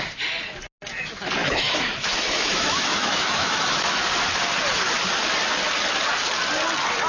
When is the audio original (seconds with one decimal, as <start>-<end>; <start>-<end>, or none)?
0.0-1.4; 4.0-7.1